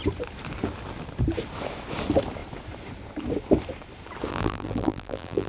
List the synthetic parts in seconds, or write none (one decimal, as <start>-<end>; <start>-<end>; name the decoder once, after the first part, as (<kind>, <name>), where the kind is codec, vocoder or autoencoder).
4.3-5.5 (vocoder, BigVGAN v2)

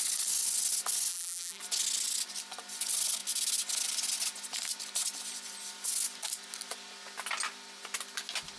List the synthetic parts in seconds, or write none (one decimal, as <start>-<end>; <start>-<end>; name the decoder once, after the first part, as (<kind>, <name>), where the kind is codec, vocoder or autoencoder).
1.1-1.6 (vocoder, BigVGAN v2)

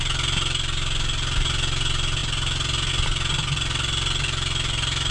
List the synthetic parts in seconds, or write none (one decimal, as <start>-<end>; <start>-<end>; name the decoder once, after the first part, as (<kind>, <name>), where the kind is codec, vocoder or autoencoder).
none

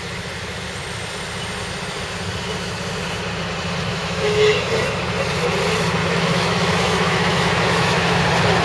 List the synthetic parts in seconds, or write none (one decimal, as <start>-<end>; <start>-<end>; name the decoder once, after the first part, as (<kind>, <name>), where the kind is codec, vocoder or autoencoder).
3.9-4.7 (autoencoder, DAC-VAE); 6.0-8.2

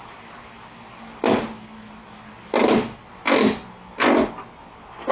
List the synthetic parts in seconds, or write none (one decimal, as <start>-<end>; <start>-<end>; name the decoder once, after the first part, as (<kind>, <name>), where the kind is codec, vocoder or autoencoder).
none